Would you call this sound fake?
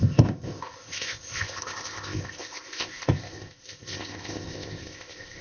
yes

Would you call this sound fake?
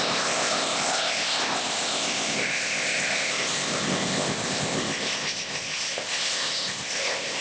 yes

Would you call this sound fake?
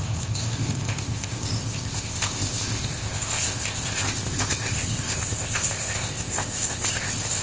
yes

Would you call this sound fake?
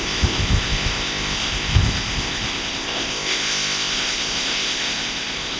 yes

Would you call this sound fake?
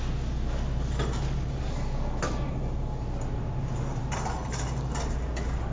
no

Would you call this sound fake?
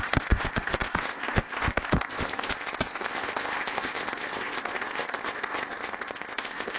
yes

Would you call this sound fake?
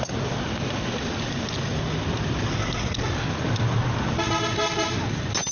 no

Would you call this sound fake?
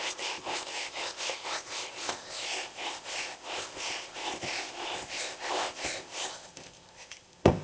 yes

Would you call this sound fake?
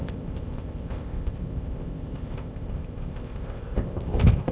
yes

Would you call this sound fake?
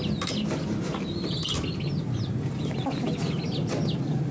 no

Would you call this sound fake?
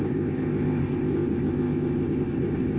yes